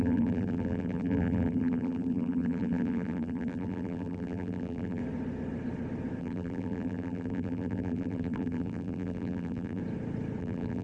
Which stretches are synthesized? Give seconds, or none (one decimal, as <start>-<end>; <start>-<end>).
0.0-5.0; 6.2-9.8; 10.4-10.8